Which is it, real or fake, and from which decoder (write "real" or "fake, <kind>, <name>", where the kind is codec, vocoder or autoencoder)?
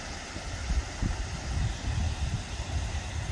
real